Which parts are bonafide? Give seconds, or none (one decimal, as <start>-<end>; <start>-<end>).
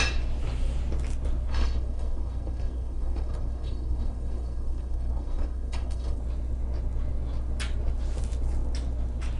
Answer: 0.0-1.5; 6.2-9.4